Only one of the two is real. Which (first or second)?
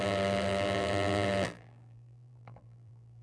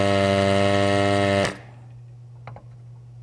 second